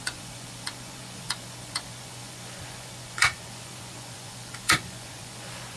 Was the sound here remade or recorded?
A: remade